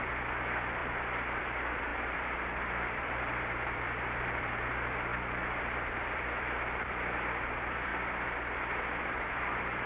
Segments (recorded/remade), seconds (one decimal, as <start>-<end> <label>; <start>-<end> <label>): 0.0-0.8 remade; 0.8-1.4 recorded; 1.4-5.1 remade; 5.1-5.6 recorded; 5.6-7.9 remade; 7.9-9.0 recorded; 9.0-9.9 remade